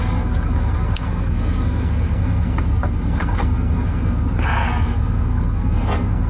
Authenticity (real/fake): fake